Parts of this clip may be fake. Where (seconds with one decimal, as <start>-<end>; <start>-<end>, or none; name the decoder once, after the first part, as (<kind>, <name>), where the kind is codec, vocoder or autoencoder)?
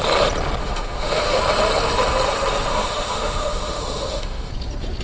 0.6-1.4 (autoencoder, DAC-VAE); 2.7-4.5